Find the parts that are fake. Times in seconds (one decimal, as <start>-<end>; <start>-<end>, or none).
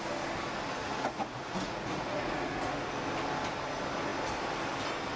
0.8-2.9